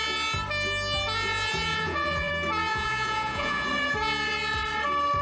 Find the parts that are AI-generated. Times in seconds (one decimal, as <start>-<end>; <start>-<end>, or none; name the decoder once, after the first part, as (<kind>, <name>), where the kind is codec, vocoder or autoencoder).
1.7-2.3 (vocoder, Vocos); 2.7-3.7